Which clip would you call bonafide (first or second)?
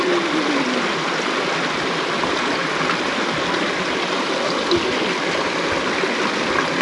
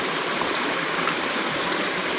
first